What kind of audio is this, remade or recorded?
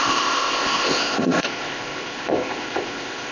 remade